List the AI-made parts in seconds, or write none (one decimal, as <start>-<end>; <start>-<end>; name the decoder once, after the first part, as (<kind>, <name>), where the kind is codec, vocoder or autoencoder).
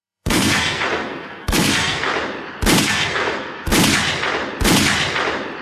0.0-2.1 (codec, SNAC); 2.8-3.7